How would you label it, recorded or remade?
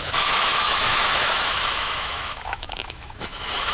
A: remade